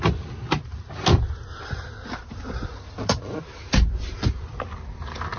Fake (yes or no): no